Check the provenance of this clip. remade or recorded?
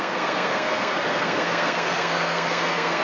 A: remade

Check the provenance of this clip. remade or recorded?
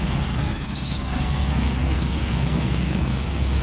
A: remade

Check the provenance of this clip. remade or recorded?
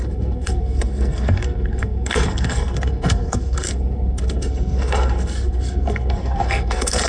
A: remade